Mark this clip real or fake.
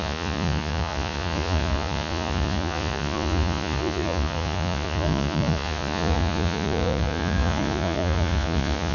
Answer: fake